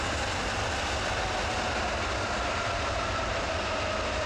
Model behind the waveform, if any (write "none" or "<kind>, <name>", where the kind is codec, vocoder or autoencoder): none